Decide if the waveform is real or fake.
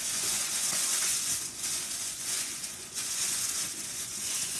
fake